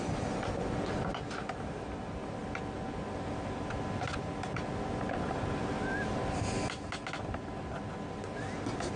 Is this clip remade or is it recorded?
recorded